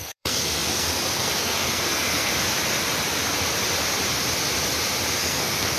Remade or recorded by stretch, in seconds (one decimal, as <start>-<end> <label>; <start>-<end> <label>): 0.0-2.3 remade; 2.3-5.2 recorded; 5.2-5.8 remade